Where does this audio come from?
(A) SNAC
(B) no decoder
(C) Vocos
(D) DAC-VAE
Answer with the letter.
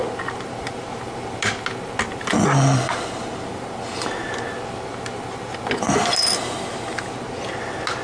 B